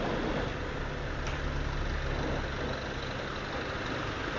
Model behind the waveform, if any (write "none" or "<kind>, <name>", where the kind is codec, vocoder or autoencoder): none